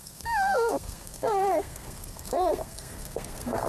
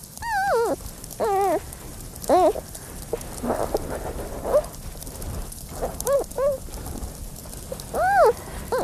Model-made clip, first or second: first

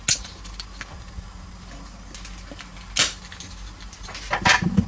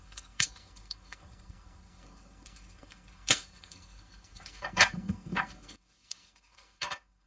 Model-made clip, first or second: second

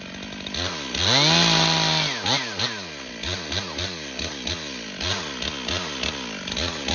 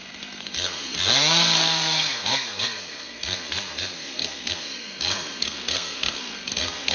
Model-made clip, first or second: second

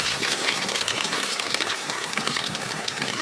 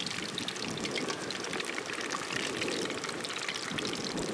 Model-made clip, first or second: first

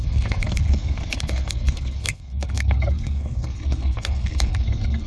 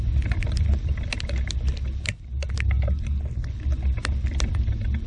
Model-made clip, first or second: first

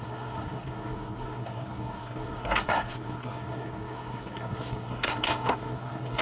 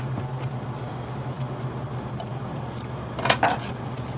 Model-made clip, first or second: first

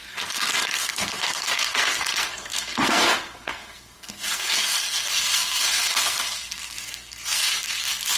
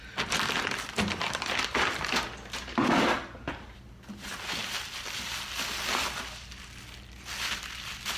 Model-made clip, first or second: first